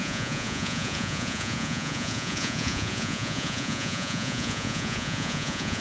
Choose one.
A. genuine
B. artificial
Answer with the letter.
B